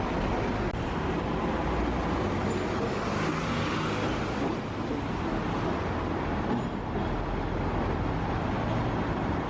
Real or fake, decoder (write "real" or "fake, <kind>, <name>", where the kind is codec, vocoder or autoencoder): real